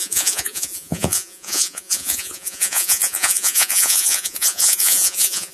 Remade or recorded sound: remade